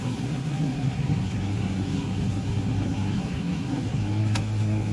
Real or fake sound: fake